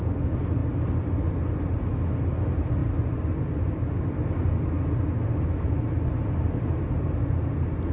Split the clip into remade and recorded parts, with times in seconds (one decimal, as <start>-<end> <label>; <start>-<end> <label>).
0.0-7.9 recorded